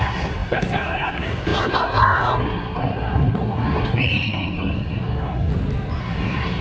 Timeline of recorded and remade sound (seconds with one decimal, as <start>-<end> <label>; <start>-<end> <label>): 0.0-5.5 remade; 5.5-6.0 recorded; 6.0-6.6 remade